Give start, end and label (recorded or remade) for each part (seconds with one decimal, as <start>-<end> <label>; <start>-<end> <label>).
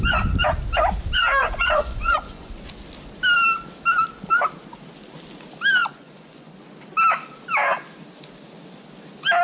0.0-1.4 recorded; 1.4-2.7 remade; 2.7-5.8 recorded; 5.8-6.6 remade; 6.6-9.4 recorded